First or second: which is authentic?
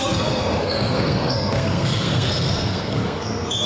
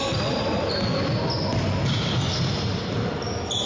second